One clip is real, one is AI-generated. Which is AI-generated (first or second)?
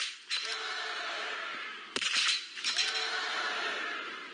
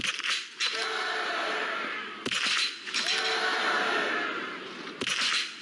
first